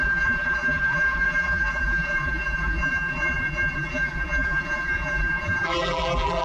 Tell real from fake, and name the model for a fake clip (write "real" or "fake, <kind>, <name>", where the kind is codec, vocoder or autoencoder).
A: fake, vocoder, BigVGAN v2